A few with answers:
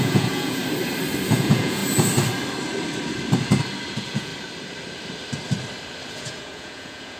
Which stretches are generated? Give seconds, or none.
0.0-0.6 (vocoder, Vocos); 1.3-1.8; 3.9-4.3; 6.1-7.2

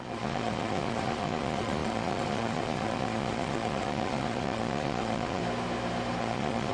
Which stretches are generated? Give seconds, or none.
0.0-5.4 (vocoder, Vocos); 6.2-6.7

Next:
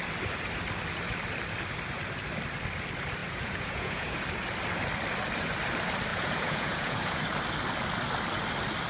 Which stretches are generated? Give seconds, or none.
3.2-4.2 (vocoder, Vocos); 6.1-7.2

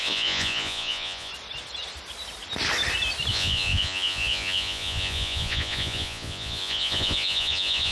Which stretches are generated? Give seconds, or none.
0.0-1.3 (vocoder, Vocos); 3.3-7.9

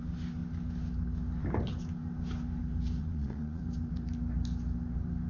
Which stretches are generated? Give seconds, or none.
3.0-3.6 (vocoder, Vocos)

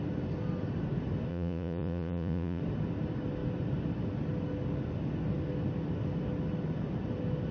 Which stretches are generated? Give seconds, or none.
1.3-2.6 (vocoder, Vocos)

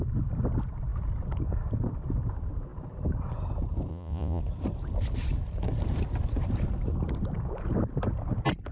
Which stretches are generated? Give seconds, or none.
3.9-4.4 (vocoder, Vocos)